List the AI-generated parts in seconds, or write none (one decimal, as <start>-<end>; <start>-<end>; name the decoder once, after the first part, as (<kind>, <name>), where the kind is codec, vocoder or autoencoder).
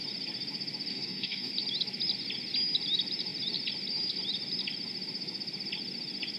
0.9-1.5 (codec, DAC)